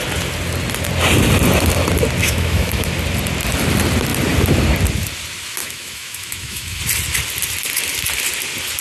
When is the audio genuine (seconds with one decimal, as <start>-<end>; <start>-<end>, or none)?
0.0-2.2; 2.9-5.6; 6.8-8.8